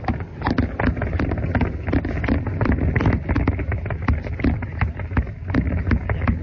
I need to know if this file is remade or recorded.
recorded